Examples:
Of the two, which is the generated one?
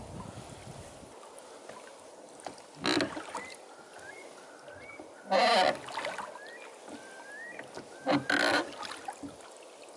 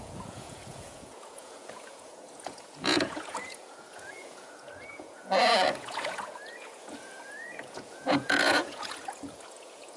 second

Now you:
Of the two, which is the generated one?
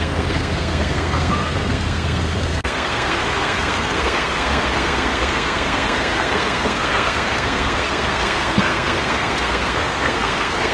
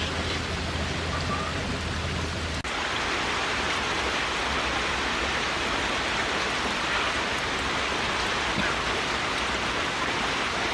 first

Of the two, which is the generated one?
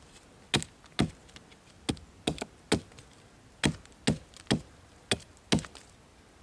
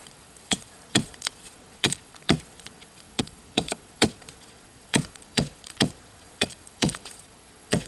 second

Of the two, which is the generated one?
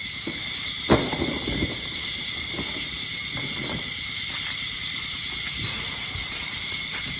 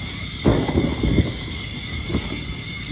second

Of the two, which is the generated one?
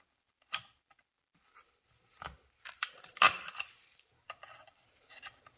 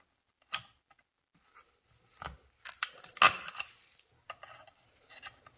first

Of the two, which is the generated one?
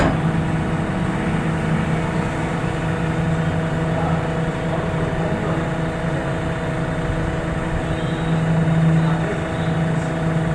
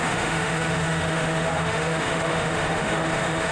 second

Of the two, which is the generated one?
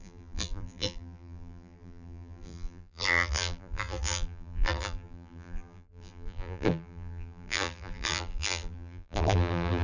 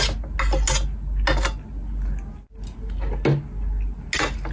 first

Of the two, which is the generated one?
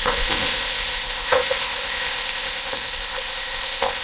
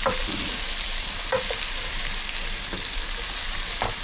first